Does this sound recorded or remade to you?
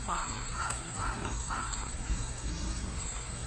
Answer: remade